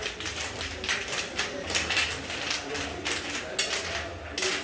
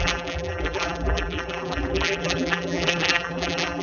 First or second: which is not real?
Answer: second